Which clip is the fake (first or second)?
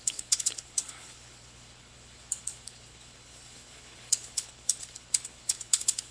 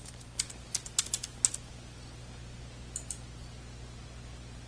first